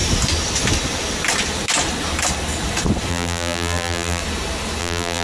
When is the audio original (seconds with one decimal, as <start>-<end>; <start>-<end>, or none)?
0.0-3.1; 4.2-4.8